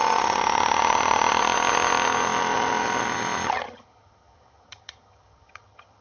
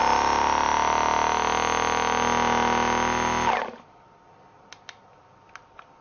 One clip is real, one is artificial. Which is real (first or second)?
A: second